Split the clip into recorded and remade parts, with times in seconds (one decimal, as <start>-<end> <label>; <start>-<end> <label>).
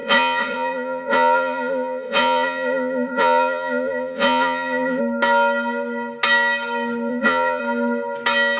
0.0-5.0 remade; 5.0-7.1 recorded; 7.1-7.6 remade; 7.6-8.6 recorded